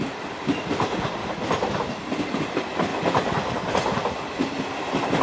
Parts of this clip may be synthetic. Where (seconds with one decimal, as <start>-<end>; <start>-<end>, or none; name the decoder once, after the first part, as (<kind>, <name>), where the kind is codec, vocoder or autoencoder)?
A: none